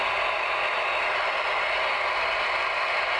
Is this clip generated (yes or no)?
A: no